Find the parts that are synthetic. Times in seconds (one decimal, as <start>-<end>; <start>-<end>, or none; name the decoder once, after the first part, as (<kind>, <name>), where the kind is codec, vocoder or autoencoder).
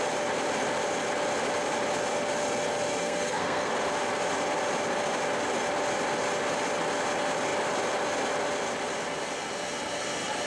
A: 3.0-3.7 (codec, SNAC)